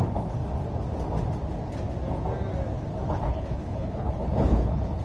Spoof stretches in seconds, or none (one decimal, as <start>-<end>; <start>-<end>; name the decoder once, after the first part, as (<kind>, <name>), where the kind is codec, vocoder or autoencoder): 0.0-0.4 (codec, HILCodec); 3.1-5.0